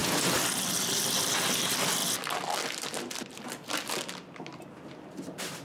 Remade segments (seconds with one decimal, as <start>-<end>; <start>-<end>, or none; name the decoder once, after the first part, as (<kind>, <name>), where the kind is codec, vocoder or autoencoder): 0.7-2.0 (vocoder, BigVGAN v2)